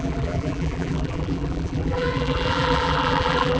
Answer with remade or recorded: remade